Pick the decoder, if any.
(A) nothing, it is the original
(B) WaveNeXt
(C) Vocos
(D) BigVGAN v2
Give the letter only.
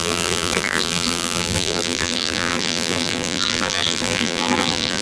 D